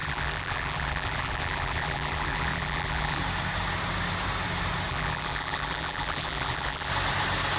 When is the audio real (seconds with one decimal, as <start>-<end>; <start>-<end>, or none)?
3.2-4.9; 6.9-7.6